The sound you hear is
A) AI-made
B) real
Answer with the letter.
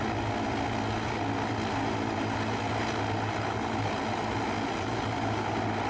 B